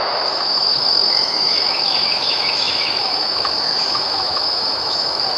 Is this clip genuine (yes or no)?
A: no